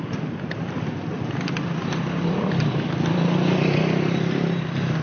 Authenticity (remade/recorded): remade